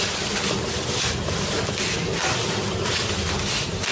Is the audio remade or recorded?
recorded